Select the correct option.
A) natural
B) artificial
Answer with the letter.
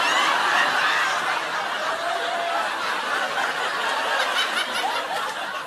A